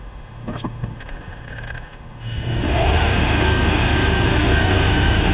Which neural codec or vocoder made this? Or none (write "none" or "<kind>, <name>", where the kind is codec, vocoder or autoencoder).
autoencoder, DAC-VAE